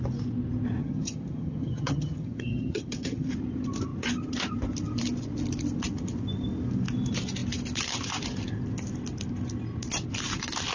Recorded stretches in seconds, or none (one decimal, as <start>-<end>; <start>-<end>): 0.0-0.8; 3.3-10.7